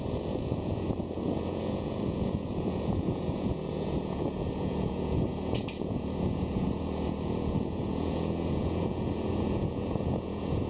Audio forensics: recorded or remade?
remade